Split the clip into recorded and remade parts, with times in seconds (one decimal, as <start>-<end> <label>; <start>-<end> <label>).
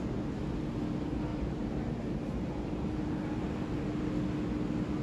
0.0-1.3 recorded; 1.3-3.8 remade; 3.8-5.0 recorded